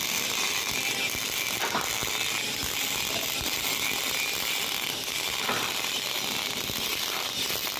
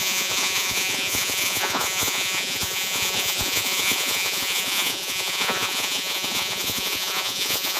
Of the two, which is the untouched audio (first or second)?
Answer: first